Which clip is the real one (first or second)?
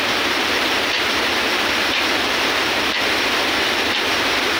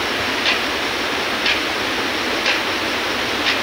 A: second